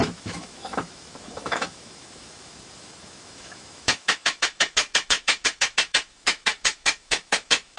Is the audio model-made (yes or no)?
yes